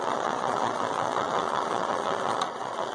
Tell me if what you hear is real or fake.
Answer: fake